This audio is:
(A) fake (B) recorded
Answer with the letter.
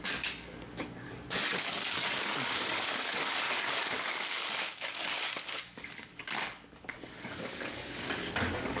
A